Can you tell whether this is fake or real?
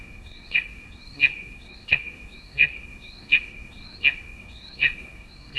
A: fake